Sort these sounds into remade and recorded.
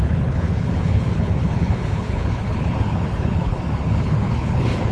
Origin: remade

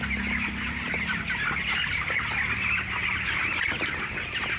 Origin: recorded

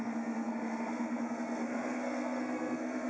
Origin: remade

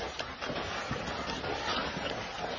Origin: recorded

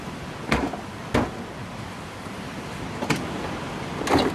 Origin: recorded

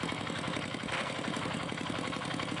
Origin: remade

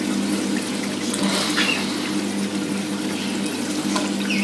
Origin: recorded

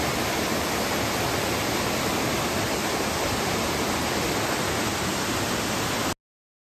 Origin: recorded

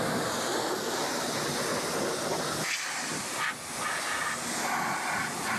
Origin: recorded